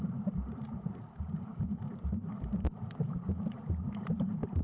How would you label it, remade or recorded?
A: remade